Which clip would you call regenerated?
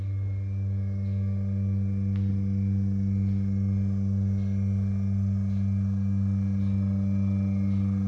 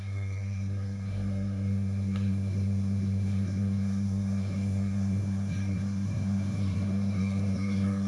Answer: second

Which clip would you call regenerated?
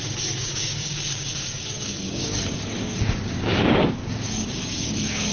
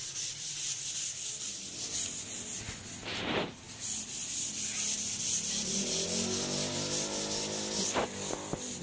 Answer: first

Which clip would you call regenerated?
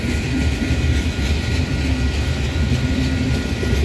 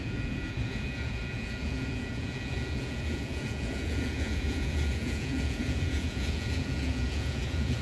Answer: second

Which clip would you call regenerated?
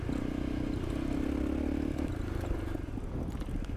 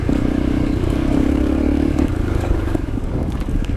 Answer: second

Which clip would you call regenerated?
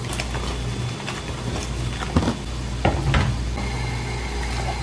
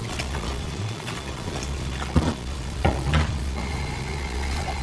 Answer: second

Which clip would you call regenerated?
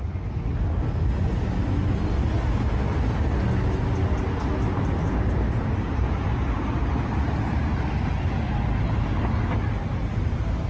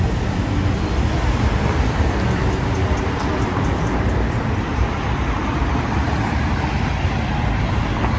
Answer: second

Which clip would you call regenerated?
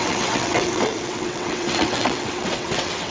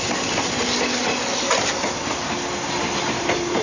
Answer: first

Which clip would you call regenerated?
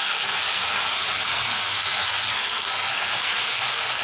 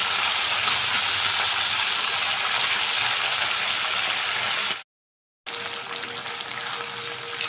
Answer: first